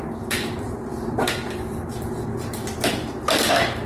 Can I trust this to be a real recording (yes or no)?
no